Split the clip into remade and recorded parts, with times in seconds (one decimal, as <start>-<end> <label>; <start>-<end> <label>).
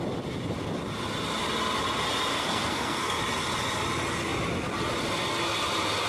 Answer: 0.0-2.3 recorded; 2.3-3.2 remade; 3.2-6.1 recorded